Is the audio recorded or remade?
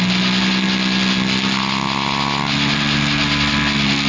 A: recorded